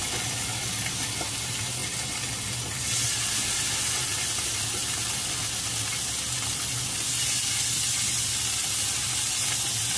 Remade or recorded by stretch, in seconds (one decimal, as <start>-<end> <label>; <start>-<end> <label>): 0.0-10.0 recorded